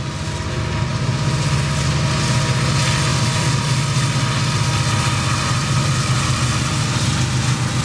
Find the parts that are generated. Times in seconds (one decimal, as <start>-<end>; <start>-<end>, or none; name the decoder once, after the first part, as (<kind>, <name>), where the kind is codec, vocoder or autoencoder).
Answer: 3.1-3.7 (vocoder, BigVGAN v2)